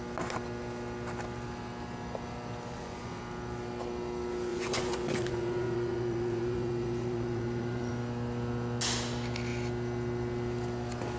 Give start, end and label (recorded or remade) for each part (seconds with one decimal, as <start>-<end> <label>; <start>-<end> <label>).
0.0-2.7 recorded; 2.7-3.2 remade; 3.2-4.5 recorded; 4.5-7.9 remade; 7.9-11.2 recorded